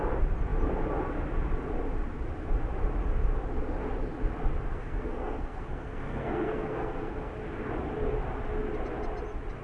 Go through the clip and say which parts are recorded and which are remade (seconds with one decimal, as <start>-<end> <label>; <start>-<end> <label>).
0.0-4.7 recorded; 4.7-7.3 remade; 7.3-9.6 recorded